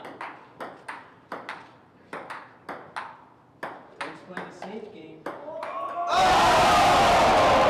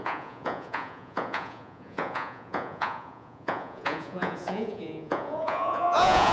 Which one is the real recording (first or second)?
first